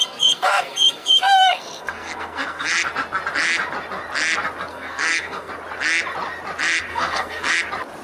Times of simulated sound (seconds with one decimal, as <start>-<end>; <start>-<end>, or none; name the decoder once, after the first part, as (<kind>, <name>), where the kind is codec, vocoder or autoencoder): 0.0-2.7 (codec, SNAC); 4.7-5.5; 6.9-7.5